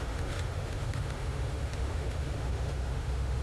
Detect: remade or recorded remade